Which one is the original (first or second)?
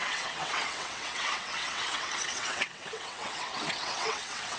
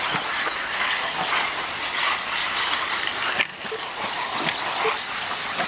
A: second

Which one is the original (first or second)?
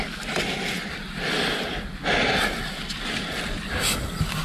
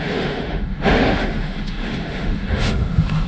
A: first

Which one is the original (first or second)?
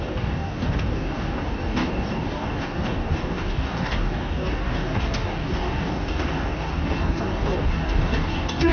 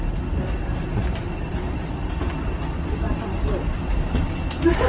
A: second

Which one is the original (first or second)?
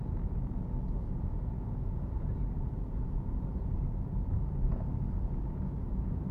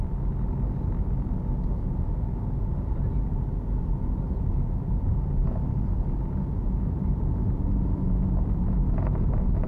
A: second